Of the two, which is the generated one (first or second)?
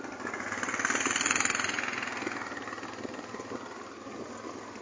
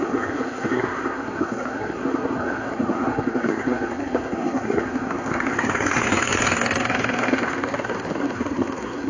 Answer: second